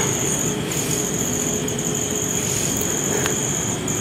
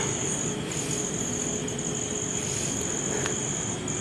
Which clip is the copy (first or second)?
first